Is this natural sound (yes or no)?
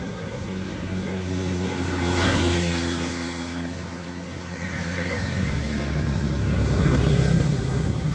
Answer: no